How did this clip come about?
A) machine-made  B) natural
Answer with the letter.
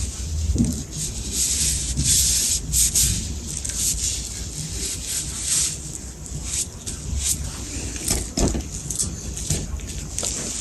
B